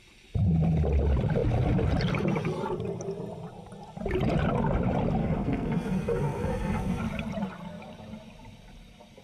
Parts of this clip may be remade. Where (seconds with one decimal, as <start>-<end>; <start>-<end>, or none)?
5.2-7.0